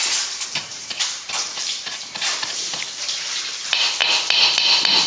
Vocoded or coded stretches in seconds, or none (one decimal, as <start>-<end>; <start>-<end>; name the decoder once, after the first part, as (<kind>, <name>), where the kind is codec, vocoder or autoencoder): 0.6-3.5 (vocoder, BigVGAN v2)